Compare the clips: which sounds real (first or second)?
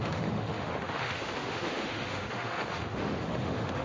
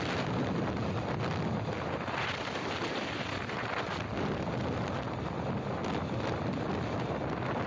second